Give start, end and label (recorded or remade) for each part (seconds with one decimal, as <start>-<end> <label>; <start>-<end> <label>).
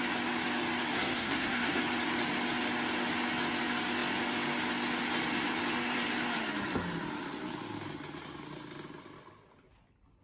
0.0-0.9 recorded; 0.9-1.8 remade; 1.8-10.2 recorded